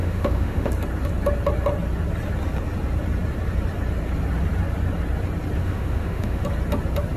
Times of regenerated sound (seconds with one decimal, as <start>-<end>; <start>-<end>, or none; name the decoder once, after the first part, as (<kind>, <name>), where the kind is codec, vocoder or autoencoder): 0.0-0.7 (autoencoder, DAC-VAE); 5.6-6.4